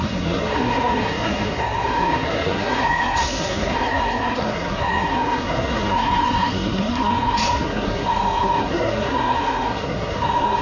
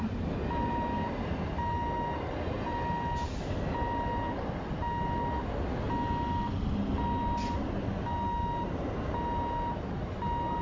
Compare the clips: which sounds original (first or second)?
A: second